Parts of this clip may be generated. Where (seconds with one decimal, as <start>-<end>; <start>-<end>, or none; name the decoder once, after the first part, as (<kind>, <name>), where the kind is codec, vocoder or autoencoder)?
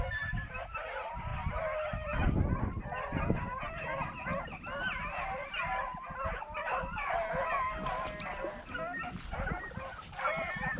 none